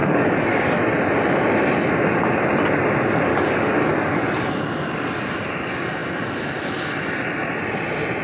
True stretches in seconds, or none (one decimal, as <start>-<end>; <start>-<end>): 0.8-3.3; 4.5-8.2